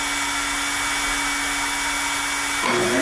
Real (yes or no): yes